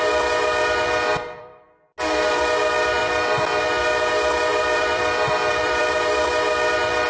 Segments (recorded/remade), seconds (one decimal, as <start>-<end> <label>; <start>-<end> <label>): 0.0-1.2 recorded; 1.2-1.8 remade; 1.8-3.0 recorded; 3.0-3.6 remade; 3.6-4.5 recorded; 4.5-6.3 remade; 6.3-7.1 recorded